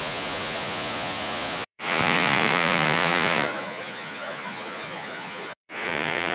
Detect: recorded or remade remade